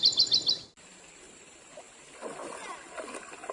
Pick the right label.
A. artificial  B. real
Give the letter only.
B